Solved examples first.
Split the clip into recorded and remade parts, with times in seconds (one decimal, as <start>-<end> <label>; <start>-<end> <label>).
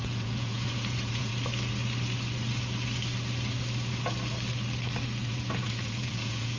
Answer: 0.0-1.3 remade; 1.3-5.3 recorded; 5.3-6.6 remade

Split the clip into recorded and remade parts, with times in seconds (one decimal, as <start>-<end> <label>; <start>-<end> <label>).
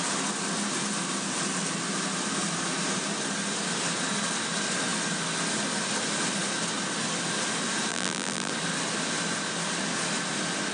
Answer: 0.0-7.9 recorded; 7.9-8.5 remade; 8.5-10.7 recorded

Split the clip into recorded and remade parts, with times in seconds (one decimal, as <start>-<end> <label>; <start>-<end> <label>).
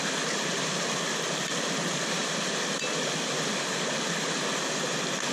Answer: 0.0-5.3 recorded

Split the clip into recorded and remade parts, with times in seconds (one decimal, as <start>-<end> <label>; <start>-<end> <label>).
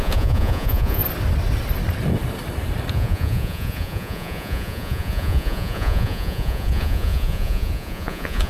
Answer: 0.0-1.0 remade; 1.0-2.9 recorded; 2.9-8.5 remade